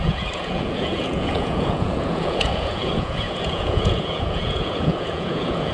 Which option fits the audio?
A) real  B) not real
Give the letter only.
B